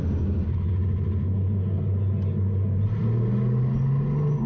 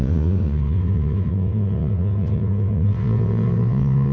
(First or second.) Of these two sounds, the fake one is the second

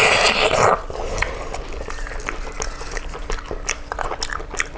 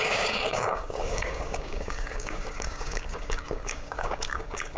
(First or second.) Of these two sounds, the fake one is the second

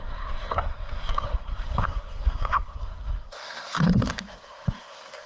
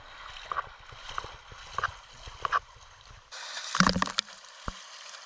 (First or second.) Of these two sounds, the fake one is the first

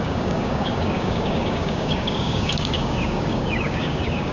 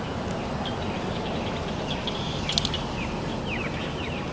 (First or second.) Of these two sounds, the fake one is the first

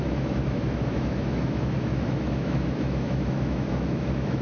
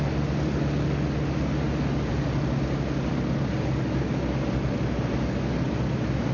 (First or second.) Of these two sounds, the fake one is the first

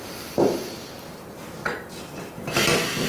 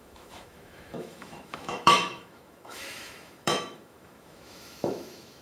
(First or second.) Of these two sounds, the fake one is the second